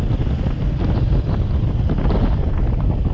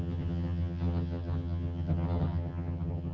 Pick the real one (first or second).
first